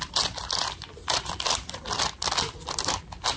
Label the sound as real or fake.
fake